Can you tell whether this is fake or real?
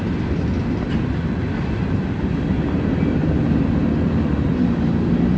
real